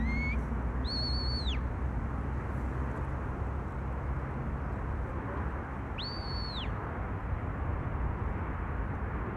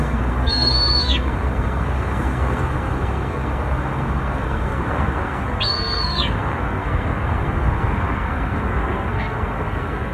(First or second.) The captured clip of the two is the first